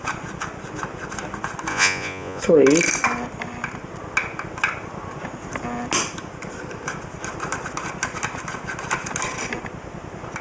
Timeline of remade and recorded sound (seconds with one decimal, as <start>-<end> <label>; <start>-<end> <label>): 0.0-1.7 recorded; 1.7-2.4 remade; 2.4-10.4 recorded